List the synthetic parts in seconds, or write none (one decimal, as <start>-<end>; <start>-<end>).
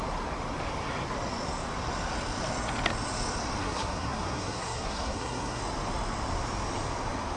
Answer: 3.6-5.6